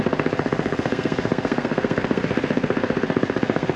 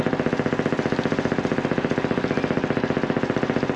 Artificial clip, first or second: first